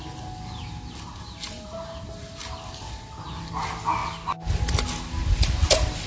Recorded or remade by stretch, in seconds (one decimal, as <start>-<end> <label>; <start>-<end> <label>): 0.0-6.1 recorded